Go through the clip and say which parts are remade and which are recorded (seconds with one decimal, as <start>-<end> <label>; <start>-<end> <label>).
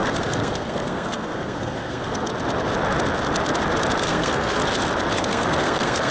0.0-2.3 remade; 2.3-4.0 recorded; 4.0-4.6 remade; 4.6-5.2 recorded; 5.2-6.1 remade